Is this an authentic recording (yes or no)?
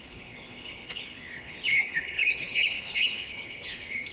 no